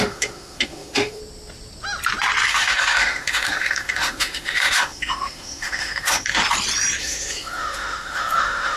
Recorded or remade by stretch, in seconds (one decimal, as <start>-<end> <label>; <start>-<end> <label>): 0.0-1.2 remade; 1.2-2.5 recorded; 2.5-6.4 remade; 6.4-7.0 recorded; 7.0-8.8 remade